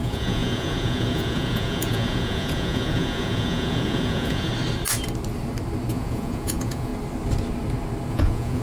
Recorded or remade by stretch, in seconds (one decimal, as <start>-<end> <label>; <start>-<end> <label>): 0.0-4.5 remade; 4.5-5.9 recorded; 5.9-6.9 remade; 6.9-8.1 recorded; 8.1-8.6 remade